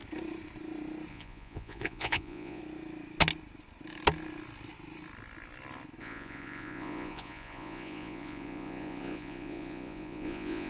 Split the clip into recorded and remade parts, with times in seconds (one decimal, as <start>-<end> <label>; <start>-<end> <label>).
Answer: 0.0-1.1 recorded; 1.1-2.6 remade; 2.6-6.0 recorded; 6.0-10.7 remade